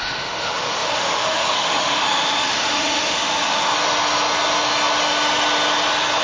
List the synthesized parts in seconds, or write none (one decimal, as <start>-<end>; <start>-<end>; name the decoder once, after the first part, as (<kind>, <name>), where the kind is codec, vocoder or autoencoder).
0.0-3.7 (autoencoder, DAC-VAE)